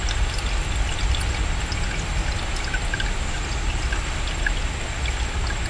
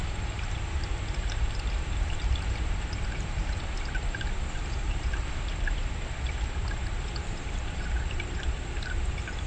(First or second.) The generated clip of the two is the second